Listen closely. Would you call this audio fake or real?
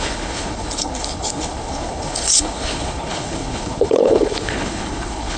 fake